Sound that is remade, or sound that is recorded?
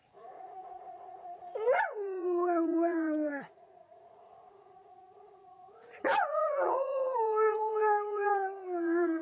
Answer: remade